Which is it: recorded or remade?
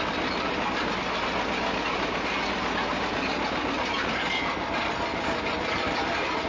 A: recorded